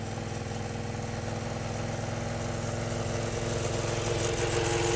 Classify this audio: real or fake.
real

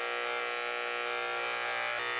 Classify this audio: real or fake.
real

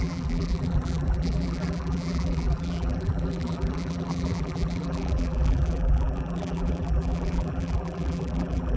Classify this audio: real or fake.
fake